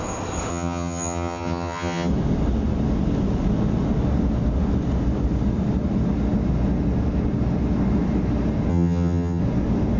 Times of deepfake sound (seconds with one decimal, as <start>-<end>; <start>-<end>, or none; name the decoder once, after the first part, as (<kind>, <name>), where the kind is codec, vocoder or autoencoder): 0.5-2.1 (vocoder, HiFi-GAN); 8.7-9.4